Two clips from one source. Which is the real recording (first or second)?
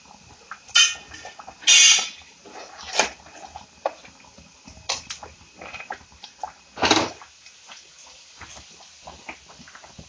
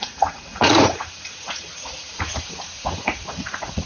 first